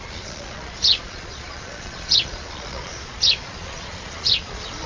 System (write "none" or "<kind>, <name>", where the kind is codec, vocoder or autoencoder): vocoder, Vocos